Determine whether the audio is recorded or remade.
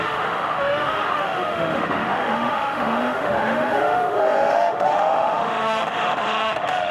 remade